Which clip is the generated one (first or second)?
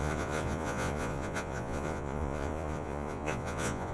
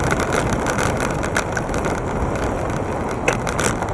first